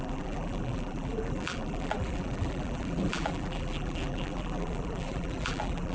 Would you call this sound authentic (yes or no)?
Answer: no